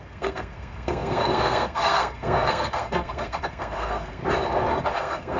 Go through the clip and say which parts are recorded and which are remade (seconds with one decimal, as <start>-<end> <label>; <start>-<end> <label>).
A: 0.0-4.2 remade; 4.2-4.9 recorded; 4.9-5.4 remade